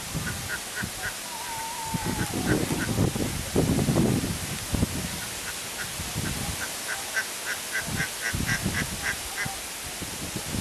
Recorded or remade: recorded